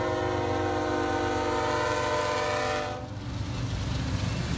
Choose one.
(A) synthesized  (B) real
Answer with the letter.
B